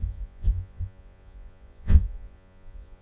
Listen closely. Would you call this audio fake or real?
fake